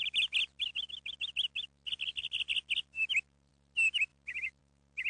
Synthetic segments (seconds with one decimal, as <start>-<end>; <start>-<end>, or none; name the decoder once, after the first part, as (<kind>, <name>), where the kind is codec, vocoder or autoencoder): none